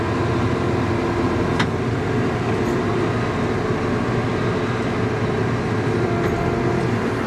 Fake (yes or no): no